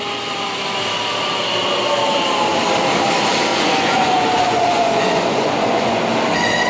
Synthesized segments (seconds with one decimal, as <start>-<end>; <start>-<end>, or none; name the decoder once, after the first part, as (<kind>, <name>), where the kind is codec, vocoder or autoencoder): 3.5-6.0 (vocoder, Vocos)